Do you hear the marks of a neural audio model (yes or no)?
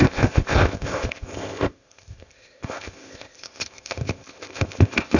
yes